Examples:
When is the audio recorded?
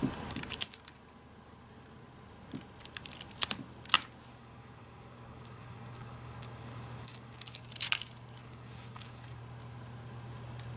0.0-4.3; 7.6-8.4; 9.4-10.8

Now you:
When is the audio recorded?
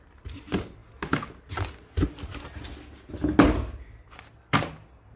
0.8-3.9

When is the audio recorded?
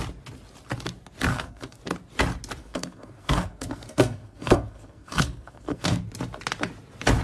0.0-1.3; 1.8-2.6; 6.0-7.2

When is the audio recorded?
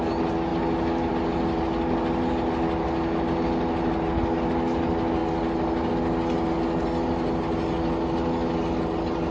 0.0-9.3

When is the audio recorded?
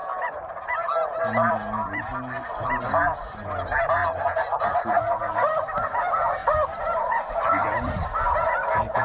0.0-4.0; 5.2-6.4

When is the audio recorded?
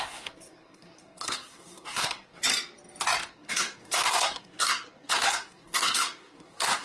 2.4-3.3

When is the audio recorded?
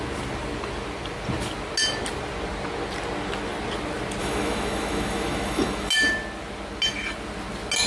0.0-4.2; 5.9-7.9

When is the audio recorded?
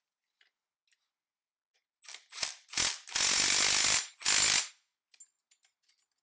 0.0-6.2